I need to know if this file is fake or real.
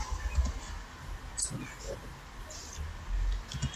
real